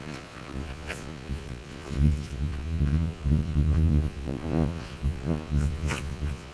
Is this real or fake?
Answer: fake